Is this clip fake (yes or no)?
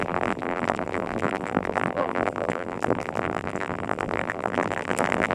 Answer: yes